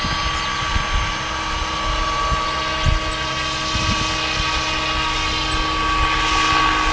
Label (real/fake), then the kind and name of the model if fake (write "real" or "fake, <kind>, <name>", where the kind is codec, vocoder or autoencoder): real